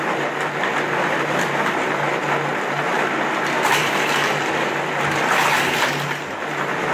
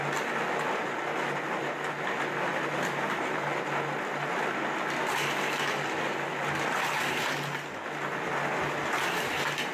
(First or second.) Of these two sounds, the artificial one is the first